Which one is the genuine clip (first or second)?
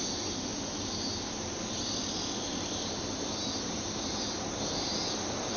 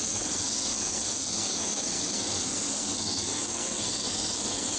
first